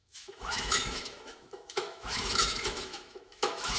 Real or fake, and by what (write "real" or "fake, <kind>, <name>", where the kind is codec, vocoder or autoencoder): fake, autoencoder, DAC-VAE